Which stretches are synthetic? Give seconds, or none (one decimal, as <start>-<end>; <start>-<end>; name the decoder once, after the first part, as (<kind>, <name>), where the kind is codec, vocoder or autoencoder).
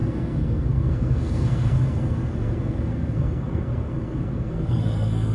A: 0.0-5.3 (codec, SNAC)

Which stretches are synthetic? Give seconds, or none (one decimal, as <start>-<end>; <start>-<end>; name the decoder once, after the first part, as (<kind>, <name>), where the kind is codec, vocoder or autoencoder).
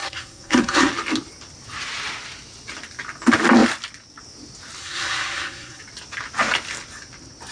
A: 0.0-0.9 (codec, SNAC); 4.8-5.8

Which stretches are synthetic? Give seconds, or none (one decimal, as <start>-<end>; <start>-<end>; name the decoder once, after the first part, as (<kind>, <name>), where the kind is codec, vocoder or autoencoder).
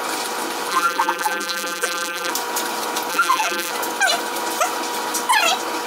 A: 0.7-2.3 (vocoder, BigVGAN v2); 3.1-3.7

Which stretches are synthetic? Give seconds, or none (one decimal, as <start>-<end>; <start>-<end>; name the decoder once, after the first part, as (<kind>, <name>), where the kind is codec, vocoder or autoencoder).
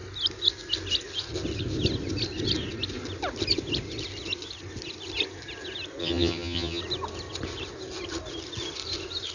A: 6.0-6.8 (vocoder, HiFi-GAN)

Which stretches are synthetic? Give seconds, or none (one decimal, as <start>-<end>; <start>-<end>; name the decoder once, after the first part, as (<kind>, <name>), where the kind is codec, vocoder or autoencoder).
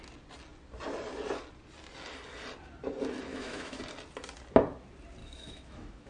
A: 3.3-3.8 (autoencoder, DAC-VAE); 5.2-6.1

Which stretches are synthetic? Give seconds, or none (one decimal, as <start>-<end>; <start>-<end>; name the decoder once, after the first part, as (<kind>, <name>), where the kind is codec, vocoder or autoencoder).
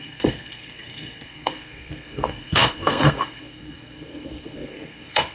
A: 0.0-5.3 (codec, SNAC)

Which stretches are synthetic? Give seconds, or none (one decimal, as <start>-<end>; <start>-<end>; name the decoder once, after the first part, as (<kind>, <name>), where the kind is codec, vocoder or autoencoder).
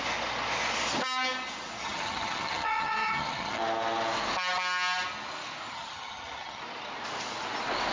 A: 1.8-3.6 (vocoder, HiFi-GAN); 5.7-6.6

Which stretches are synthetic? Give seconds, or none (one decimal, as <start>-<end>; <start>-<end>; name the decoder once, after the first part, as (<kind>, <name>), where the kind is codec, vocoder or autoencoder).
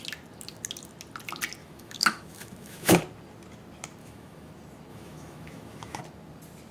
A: 1.6-3.0 (autoencoder, DAC-VAE); 4.0-4.5; 4.9-6.0